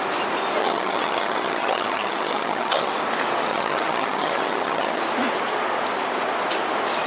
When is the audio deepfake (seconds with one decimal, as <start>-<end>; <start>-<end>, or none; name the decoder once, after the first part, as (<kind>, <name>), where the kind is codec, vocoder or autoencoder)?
0.6-2.9 (vocoder, HiFi-GAN); 3.5-5.0